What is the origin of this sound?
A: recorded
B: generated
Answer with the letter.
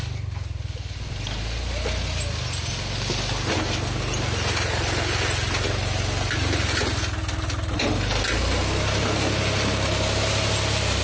A